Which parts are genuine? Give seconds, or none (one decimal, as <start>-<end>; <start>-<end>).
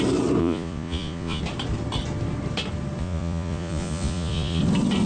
0.0-0.4; 1.4-3.0; 4.6-5.1